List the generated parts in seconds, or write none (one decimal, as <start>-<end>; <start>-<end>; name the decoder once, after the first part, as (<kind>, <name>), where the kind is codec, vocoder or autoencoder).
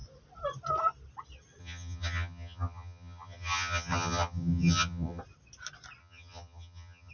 1.6-5.2 (vocoder, HiFi-GAN); 6.0-7.1